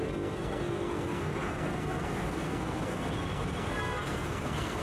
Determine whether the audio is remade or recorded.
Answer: remade